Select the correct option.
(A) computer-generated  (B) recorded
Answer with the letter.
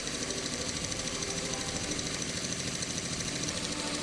A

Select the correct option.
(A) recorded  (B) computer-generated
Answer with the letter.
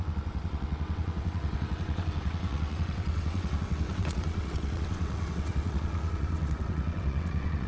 B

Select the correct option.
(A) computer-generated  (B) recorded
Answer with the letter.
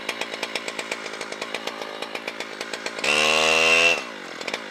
B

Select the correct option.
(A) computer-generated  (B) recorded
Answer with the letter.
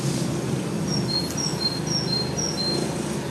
B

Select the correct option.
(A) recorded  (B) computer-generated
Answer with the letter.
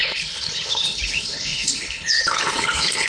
B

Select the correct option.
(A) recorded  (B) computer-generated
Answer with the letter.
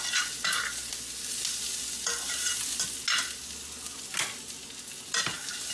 A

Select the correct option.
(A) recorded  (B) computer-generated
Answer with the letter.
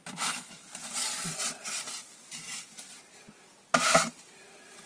A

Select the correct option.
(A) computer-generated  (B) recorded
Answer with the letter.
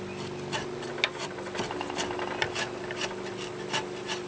B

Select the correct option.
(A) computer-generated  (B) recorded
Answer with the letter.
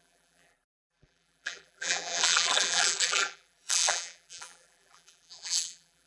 A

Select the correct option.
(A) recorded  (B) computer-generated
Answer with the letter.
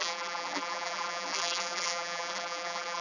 B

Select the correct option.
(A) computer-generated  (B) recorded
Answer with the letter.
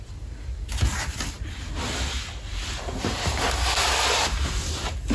B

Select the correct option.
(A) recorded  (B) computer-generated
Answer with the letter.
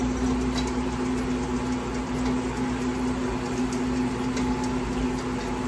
A